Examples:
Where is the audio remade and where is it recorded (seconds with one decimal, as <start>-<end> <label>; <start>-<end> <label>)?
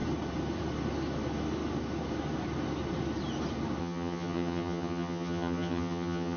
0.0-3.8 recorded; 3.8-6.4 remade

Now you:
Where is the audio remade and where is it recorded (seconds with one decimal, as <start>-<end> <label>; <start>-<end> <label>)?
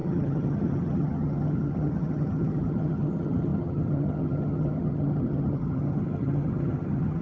0.0-7.2 remade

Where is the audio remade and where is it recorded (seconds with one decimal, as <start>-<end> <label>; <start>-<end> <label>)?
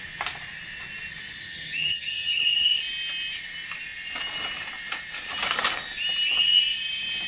0.0-1.5 recorded; 1.5-2.8 remade; 2.8-7.3 recorded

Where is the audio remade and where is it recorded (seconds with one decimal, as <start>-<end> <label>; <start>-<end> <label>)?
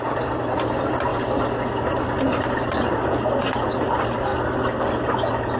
0.0-5.6 recorded